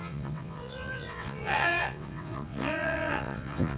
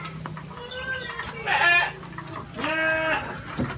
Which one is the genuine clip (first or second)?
second